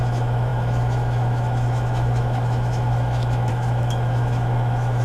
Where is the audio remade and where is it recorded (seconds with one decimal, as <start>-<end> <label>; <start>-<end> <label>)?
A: 0.0-5.0 remade